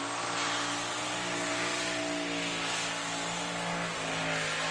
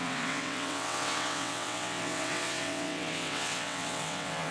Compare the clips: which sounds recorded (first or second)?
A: first